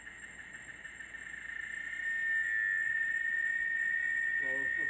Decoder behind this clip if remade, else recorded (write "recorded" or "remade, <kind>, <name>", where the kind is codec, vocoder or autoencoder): recorded